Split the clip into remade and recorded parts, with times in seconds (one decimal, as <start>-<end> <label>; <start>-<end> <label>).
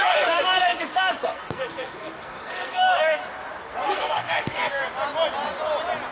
0.0-3.2 remade; 3.2-3.7 recorded; 3.7-4.8 remade; 4.8-6.1 recorded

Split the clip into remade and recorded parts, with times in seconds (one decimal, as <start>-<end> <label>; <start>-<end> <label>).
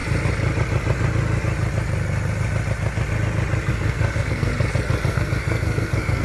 0.0-3.7 recorded; 3.7-4.5 remade; 4.5-5.1 recorded; 5.1-6.2 remade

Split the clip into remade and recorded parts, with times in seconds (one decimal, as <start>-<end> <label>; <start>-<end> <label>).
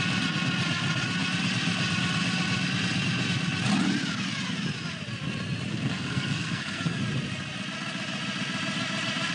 0.0-5.7 recorded; 5.7-7.0 remade; 7.0-9.3 recorded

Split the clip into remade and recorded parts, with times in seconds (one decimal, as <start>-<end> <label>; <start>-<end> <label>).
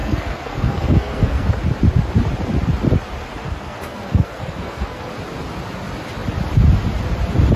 0.0-1.5 remade; 1.5-3.4 recorded; 3.4-5.1 remade; 5.1-7.6 recorded